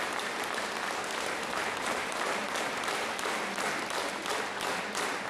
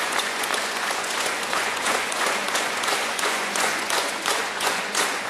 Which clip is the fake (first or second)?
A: second